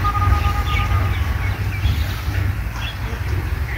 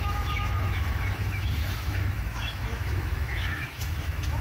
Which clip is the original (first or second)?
first